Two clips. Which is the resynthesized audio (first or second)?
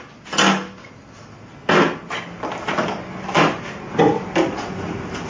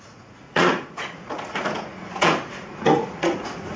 second